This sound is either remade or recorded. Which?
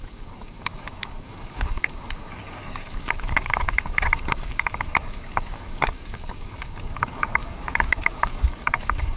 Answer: remade